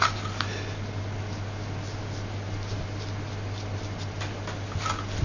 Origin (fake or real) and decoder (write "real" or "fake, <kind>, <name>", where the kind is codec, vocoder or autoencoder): real